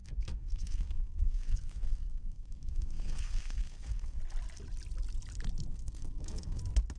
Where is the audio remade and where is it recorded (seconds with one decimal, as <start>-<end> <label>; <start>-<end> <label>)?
0.0-4.2 remade; 4.2-5.7 recorded; 5.7-6.6 remade; 6.6-7.0 recorded

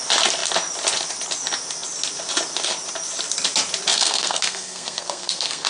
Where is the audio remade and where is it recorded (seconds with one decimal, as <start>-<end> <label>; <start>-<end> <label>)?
0.0-3.9 recorded; 3.9-5.7 remade